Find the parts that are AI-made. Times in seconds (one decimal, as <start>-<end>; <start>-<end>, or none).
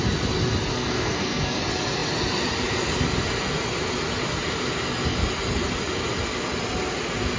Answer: 0.7-1.6